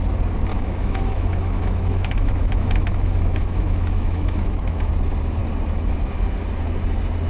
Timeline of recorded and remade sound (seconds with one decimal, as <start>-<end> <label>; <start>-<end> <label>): 0.0-0.5 recorded; 0.5-4.9 remade; 4.9-7.3 recorded